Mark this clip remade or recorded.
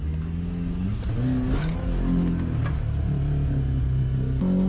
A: recorded